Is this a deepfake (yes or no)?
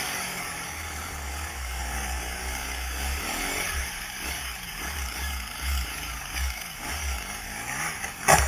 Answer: yes